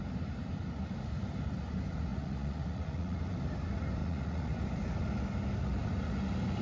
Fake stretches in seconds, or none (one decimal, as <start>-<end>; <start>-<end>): 2.1-3.2; 4.0-4.6